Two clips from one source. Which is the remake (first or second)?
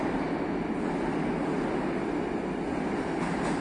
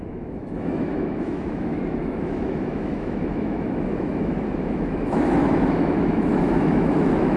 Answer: second